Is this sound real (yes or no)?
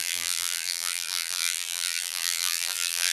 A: no